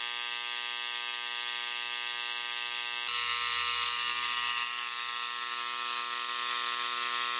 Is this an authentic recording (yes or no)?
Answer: yes